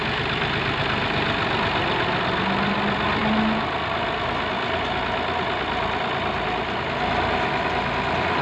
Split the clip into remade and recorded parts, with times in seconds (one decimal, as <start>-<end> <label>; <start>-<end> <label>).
0.0-8.4 recorded